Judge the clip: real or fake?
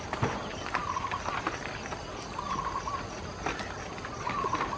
real